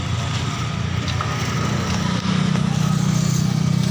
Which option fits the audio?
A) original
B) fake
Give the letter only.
A